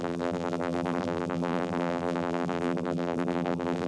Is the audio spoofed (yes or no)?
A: yes